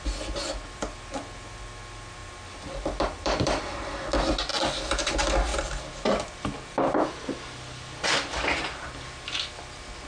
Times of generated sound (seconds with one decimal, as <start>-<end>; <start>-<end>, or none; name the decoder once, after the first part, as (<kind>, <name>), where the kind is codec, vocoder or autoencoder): 2.2-3.6 (vocoder, BigVGAN v2); 4.5-5.1; 5.5-6.0